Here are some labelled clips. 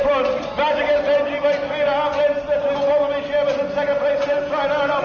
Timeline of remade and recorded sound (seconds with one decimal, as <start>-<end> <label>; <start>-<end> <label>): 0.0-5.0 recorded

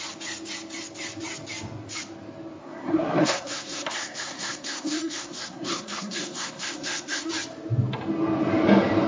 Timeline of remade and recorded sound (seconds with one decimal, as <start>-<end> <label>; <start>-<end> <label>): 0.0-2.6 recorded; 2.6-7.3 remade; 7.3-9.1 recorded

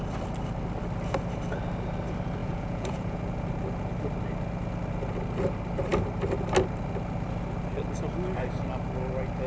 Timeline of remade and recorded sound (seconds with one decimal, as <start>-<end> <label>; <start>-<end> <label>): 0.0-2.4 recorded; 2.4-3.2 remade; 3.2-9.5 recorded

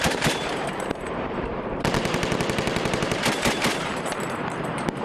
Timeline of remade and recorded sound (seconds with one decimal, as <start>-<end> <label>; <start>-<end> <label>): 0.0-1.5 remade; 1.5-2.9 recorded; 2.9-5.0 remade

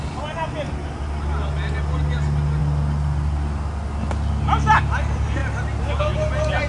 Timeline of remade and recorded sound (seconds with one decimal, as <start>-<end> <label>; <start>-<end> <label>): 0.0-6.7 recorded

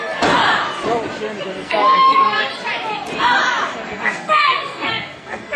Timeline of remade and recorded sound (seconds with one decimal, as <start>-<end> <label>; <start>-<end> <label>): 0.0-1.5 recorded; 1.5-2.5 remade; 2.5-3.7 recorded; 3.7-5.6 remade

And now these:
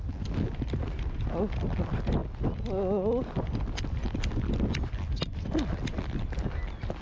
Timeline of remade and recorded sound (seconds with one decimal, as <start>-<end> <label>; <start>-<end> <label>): 0.0-7.0 recorded